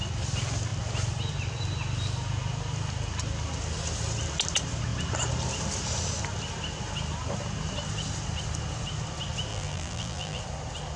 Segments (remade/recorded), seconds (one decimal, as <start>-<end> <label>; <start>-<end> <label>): 0.0-9.5 recorded; 9.5-10.4 remade; 10.4-11.0 recorded